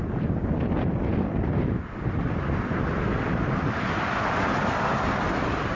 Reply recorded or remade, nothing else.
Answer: recorded